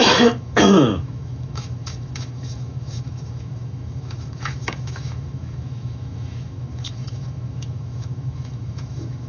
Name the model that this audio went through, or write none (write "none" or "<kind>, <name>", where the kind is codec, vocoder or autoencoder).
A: autoencoder, DAC-VAE